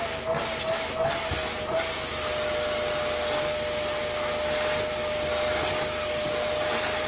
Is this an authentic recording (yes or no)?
yes